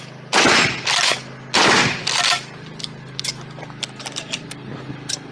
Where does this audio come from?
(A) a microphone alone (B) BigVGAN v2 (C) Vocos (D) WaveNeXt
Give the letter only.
A